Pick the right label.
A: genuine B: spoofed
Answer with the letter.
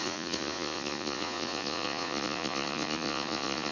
B